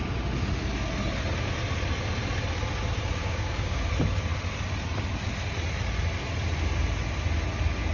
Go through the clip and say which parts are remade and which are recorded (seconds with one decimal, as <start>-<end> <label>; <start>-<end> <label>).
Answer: 0.0-3.2 recorded; 3.2-3.9 remade; 3.9-7.9 recorded